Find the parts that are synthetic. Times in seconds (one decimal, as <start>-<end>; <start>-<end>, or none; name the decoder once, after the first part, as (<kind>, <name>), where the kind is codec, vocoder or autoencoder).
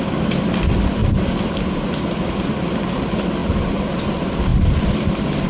none